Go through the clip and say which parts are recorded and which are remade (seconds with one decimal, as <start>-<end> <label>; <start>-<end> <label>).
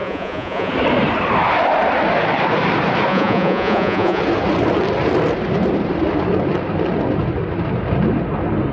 0.0-0.7 remade; 0.7-3.1 recorded; 3.1-4.2 remade; 4.2-8.7 recorded